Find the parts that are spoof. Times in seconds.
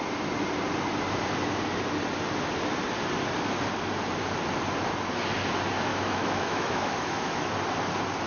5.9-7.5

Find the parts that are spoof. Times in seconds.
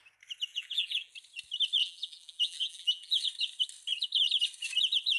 0.5-1.1; 1.8-3.2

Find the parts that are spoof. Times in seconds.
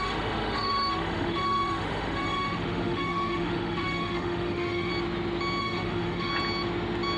0.0-4.9; 5.6-6.3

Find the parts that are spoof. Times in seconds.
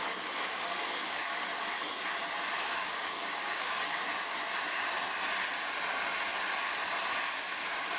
0.0-1.5; 2.6-4.0; 7.2-8.0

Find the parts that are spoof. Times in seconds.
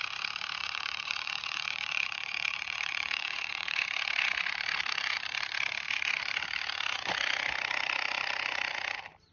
0.6-3.8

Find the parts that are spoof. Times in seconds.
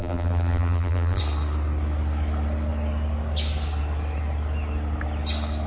0.0-1.2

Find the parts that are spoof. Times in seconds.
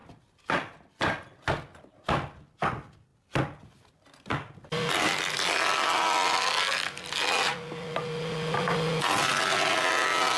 none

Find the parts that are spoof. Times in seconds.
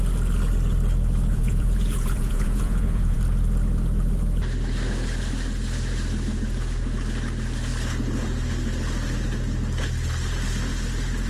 1.3-3.2